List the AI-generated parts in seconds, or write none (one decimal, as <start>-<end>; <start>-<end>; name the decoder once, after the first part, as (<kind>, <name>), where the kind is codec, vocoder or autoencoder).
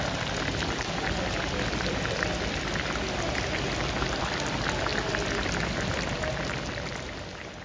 none